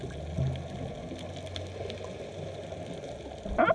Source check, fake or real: real